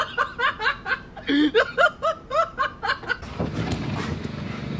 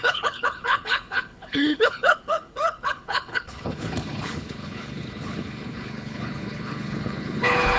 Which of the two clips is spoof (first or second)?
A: second